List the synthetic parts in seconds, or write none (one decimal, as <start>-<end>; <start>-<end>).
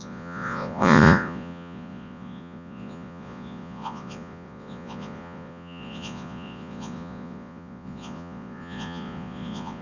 0.0-9.8